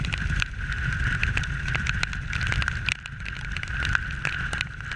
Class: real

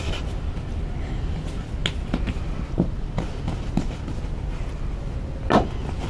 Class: real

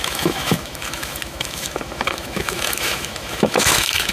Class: fake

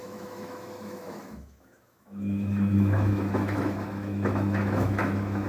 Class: fake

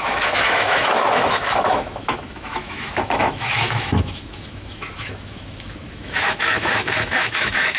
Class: fake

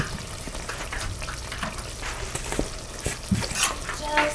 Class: real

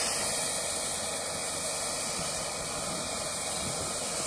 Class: real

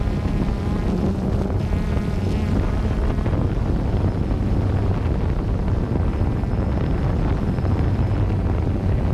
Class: real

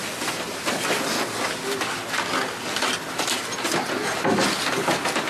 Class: real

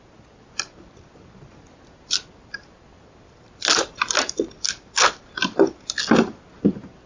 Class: real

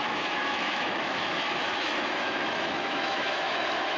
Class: fake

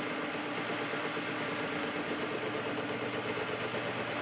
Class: real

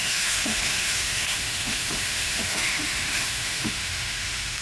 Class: fake